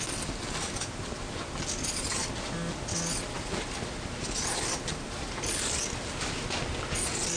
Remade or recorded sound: recorded